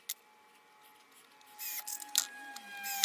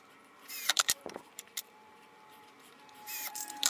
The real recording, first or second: first